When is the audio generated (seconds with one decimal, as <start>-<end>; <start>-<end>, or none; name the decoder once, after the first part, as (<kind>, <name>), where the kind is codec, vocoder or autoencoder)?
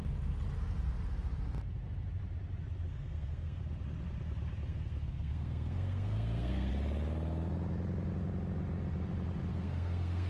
2.9-3.6 (codec, SNAC); 4.7-6.7; 9.5-10.3